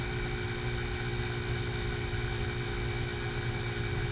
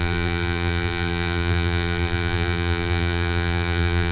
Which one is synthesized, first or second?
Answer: second